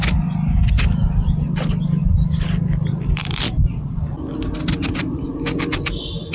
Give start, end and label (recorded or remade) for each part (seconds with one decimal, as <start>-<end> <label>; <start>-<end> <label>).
0.0-2.0 recorded; 2.0-4.1 remade; 4.1-6.3 recorded